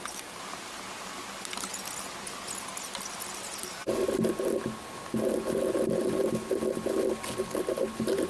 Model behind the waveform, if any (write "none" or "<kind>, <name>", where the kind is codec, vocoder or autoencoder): none